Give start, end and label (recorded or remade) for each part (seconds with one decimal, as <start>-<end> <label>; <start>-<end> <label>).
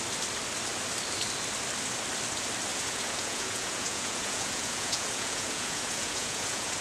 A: 0.0-2.7 recorded; 2.7-6.8 remade